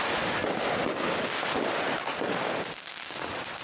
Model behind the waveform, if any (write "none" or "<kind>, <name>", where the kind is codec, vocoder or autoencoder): none